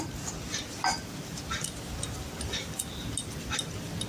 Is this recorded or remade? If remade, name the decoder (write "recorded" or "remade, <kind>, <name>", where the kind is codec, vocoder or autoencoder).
recorded